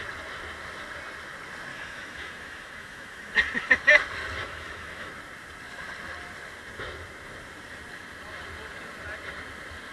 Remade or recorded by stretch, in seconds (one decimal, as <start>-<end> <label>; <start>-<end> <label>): 0.0-1.7 recorded; 1.7-3.3 remade; 3.3-4.4 recorded; 4.4-5.1 remade; 5.1-9.9 recorded